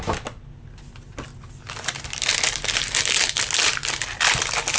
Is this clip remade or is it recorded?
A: recorded